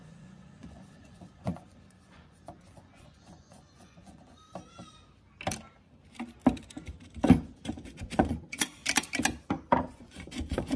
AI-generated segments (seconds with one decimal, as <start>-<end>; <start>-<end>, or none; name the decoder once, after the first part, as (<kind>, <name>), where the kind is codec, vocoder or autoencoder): 0.0-4.4 (vocoder, Vocos); 7.7-8.8; 9.8-10.8